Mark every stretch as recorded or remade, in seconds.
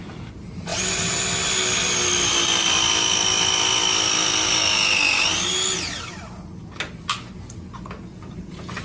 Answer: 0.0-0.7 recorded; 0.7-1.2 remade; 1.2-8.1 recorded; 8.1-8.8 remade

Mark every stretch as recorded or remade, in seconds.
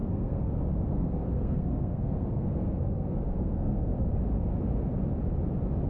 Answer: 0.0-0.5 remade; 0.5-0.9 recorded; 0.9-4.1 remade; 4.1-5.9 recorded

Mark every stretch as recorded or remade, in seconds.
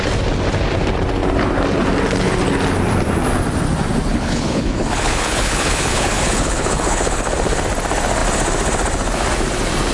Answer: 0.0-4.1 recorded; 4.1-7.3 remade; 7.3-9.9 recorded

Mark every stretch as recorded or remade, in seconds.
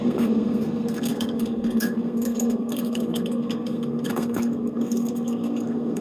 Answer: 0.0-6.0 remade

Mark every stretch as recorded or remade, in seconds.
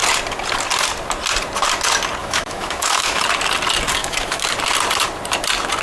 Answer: 0.0-2.2 recorded; 2.2-3.2 remade; 3.2-4.0 recorded; 4.0-4.5 remade; 4.5-5.8 recorded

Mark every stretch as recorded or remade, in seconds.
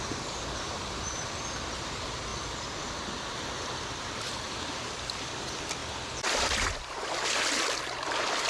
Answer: 0.0-2.3 remade; 2.3-4.1 recorded; 4.1-8.5 remade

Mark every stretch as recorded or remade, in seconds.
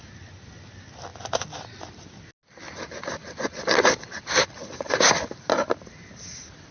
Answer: 0.0-6.7 recorded